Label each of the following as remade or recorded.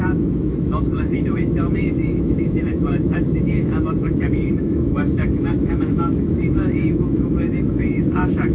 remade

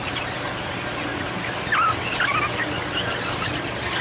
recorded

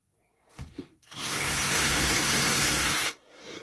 remade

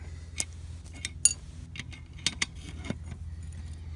recorded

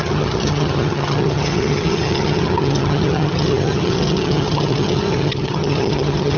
remade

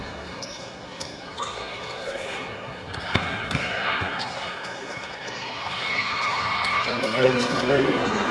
remade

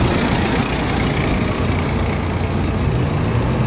recorded